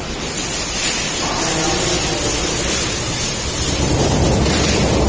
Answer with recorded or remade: recorded